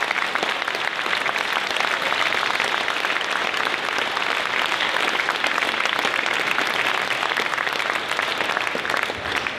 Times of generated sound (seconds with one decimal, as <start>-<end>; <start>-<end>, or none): none